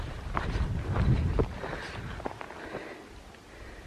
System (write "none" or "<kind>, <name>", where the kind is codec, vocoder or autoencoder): none